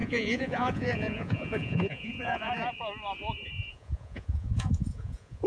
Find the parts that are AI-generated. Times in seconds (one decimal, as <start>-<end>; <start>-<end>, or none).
0.0-2.5; 3.7-5.5